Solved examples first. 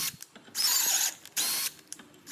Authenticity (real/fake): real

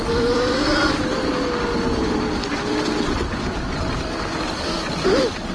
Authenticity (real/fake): real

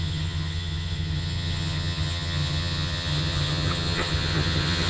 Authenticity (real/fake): fake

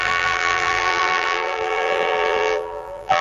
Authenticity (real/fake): fake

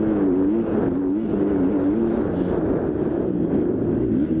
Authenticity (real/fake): real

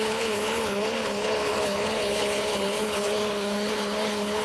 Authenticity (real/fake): fake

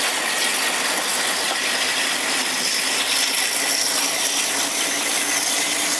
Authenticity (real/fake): real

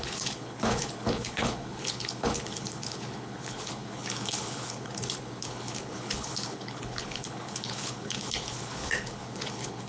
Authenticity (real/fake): fake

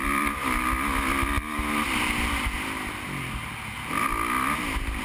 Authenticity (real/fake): real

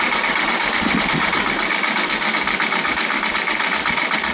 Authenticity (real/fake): real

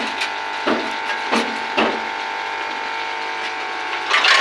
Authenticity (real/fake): real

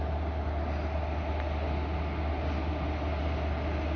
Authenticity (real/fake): real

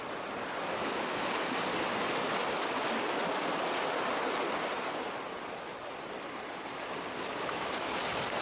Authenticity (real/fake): real